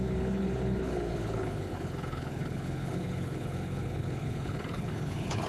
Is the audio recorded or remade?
remade